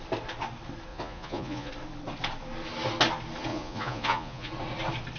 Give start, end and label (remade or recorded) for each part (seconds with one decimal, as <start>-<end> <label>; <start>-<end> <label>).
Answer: 0.0-0.9 recorded; 0.9-1.7 remade; 1.7-3.5 recorded; 3.5-4.5 remade; 4.5-5.2 recorded